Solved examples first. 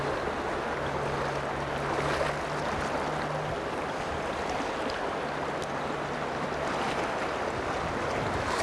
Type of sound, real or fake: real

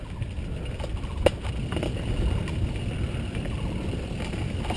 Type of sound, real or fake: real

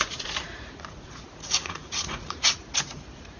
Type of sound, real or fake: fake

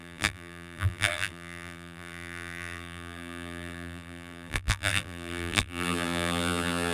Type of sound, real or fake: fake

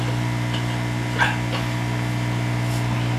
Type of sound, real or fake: real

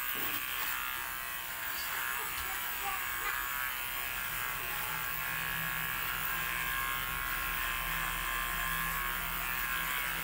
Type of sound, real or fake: real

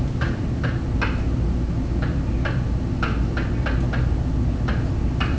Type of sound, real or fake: real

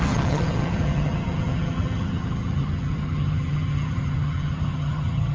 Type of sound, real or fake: fake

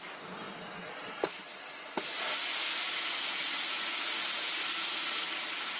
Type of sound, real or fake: real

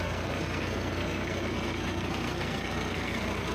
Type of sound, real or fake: fake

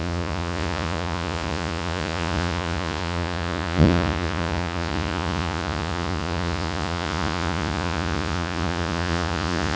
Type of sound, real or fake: fake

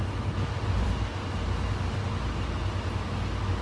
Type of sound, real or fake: real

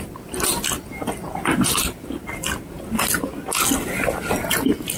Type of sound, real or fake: real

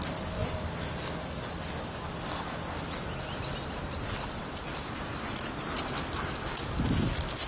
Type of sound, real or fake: real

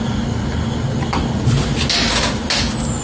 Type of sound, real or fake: real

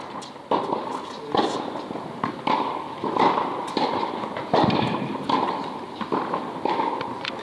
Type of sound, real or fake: real